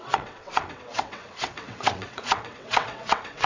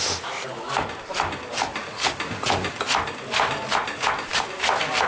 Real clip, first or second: second